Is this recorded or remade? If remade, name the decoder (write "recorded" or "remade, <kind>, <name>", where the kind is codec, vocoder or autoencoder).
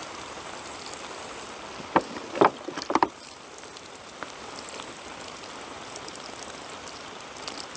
recorded